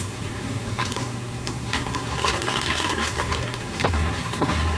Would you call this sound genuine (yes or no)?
no